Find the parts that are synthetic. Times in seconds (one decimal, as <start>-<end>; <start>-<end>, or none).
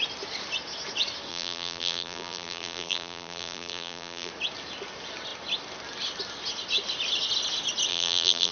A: 1.3-4.3; 7.9-8.5